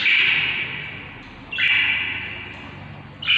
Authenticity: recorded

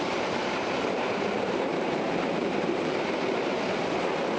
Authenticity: remade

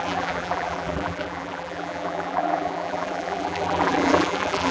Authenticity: remade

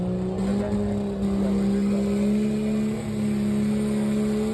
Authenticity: recorded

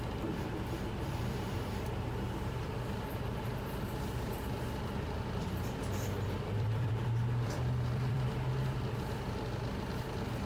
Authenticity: remade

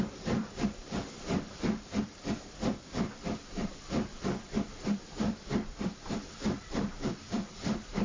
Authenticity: remade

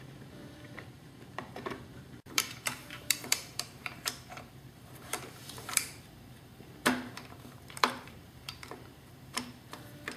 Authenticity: remade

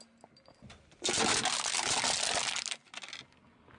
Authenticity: recorded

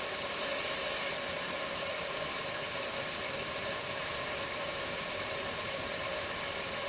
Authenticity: remade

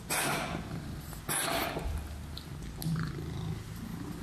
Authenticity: recorded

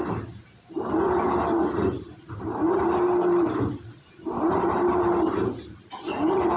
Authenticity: remade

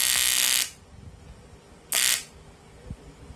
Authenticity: recorded